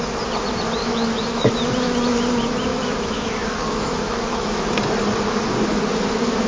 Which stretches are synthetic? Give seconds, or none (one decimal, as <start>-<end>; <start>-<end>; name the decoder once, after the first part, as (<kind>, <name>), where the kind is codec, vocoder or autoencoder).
0.8-1.5 (autoencoder, DAC-VAE); 2.7-4.7